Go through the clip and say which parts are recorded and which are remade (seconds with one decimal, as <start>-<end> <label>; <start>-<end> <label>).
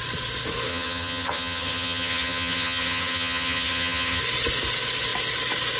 0.0-0.7 recorded; 0.7-4.2 remade; 4.2-5.8 recorded